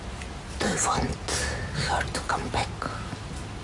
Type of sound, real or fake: real